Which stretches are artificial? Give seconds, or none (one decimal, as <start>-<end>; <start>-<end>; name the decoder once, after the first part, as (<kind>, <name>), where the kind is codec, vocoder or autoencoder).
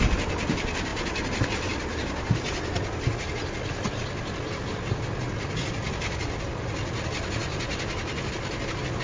none